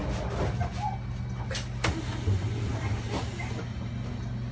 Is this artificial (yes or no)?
no